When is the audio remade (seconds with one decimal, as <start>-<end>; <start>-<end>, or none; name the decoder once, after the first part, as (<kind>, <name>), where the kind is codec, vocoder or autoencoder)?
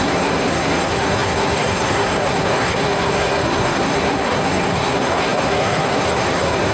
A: 0.0-6.7 (codec, SNAC)